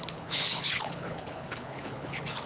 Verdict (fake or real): fake